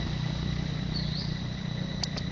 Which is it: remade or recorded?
recorded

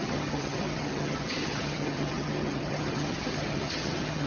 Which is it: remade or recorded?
remade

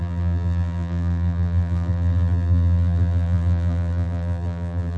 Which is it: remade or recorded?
remade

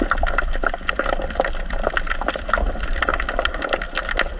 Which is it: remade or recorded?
recorded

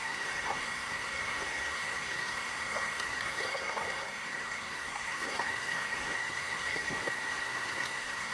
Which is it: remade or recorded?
remade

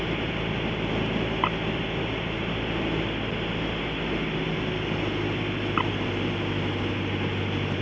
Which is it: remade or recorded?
recorded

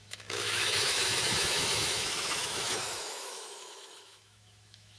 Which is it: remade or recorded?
remade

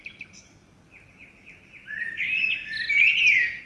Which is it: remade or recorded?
recorded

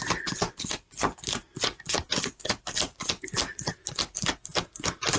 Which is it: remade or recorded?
recorded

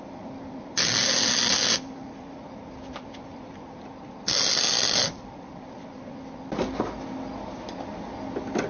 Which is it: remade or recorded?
recorded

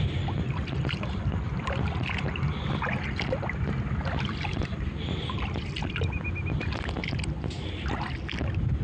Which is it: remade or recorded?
recorded